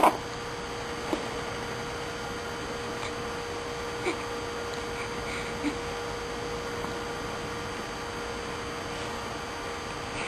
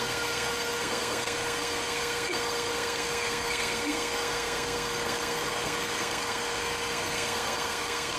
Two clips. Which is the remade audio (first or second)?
second